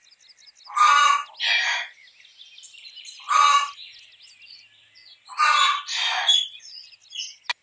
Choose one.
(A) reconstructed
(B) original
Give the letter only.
B